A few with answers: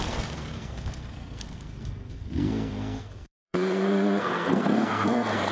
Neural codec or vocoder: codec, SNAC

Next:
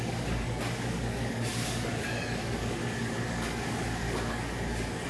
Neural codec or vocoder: codec, DAC